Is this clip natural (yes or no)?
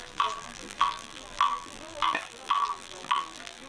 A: no